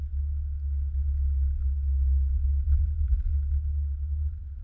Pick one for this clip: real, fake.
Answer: real